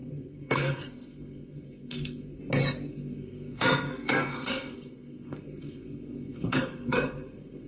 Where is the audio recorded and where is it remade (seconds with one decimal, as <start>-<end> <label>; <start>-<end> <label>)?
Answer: 0.0-2.4 remade; 2.4-2.9 recorded; 2.9-7.7 remade